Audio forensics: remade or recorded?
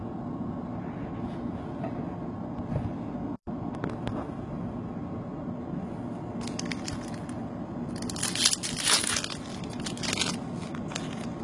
recorded